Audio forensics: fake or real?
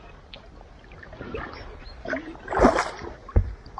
real